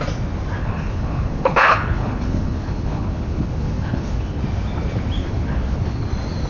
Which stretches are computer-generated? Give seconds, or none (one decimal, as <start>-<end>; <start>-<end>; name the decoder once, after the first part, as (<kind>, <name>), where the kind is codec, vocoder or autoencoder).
0.6-4.4 (codec, HILCodec); 5.2-6.1

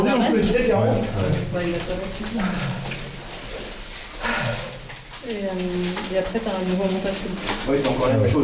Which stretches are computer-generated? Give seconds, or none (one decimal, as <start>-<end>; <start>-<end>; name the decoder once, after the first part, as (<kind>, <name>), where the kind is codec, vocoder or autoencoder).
none

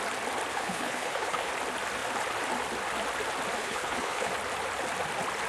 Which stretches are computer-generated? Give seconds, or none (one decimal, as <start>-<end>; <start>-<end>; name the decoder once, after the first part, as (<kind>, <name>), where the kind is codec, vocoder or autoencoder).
0.5-1.5 (codec, HILCodec); 3.6-4.3

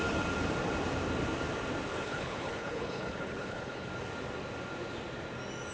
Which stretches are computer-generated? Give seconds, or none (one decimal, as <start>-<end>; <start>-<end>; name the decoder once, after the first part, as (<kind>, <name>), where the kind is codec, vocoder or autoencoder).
1.9-3.9 (codec, HILCodec)

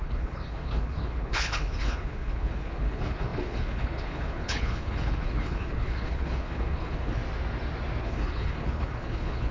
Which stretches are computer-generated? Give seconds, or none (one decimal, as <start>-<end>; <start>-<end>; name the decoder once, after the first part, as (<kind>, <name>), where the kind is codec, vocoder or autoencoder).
0.0-7.2 (codec, HILCodec); 8.0-9.5